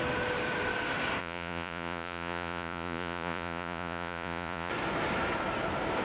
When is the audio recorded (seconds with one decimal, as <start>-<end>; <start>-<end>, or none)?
0.0-1.2; 4.7-6.0